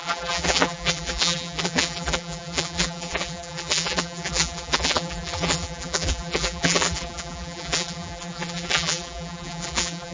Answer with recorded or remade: remade